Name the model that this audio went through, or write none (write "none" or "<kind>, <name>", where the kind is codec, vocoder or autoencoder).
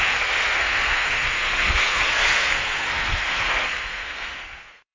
codec, SNAC